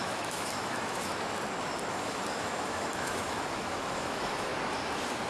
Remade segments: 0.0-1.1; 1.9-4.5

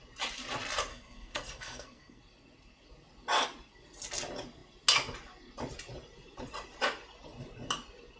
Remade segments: 0.9-2.2

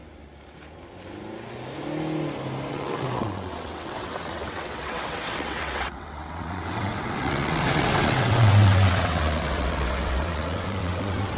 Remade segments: 2.7-11.4

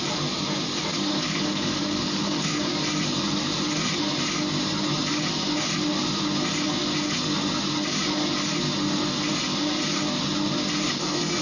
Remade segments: 0.9-2.7

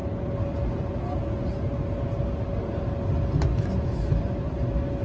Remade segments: 3.5-4.2